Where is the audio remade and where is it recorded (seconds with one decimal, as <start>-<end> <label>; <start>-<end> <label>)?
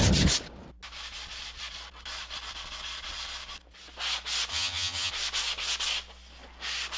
0.0-4.5 recorded; 4.5-5.1 remade; 5.1-7.0 recorded